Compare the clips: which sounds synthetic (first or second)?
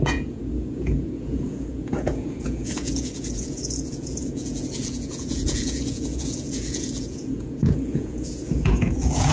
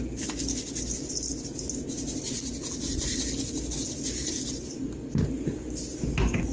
first